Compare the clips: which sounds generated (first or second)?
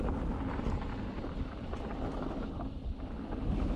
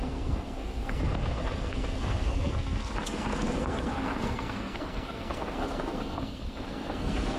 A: second